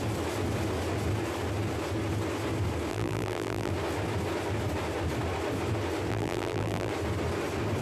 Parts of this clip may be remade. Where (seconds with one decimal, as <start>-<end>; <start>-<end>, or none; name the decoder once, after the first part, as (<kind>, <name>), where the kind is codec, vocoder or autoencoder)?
2.9-3.7 (vocoder, BigVGAN v2); 6.1-6.9